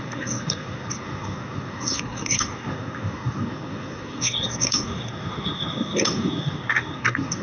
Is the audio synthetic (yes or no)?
yes